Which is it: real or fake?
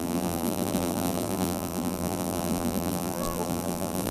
fake